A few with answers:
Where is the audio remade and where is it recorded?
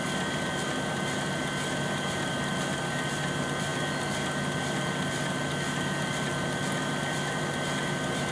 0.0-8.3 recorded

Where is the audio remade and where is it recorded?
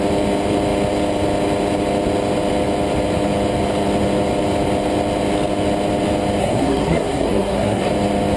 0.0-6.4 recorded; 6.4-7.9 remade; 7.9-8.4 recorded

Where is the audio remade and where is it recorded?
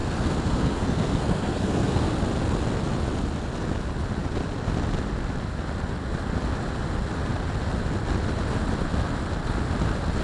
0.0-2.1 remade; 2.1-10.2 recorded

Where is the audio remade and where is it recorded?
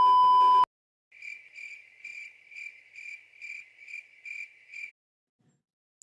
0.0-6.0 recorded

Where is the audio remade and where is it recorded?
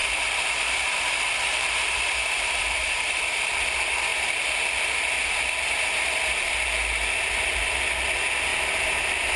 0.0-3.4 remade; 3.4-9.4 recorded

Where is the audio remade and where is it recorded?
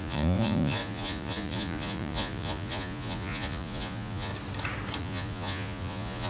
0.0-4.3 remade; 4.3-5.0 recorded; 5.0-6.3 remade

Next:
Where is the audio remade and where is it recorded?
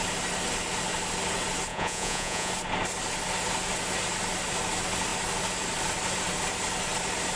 0.0-1.7 recorded; 1.7-2.5 remade; 2.5-7.4 recorded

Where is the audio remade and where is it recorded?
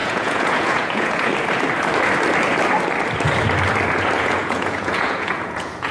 0.0-1.3 remade; 1.3-4.2 recorded; 4.2-5.9 remade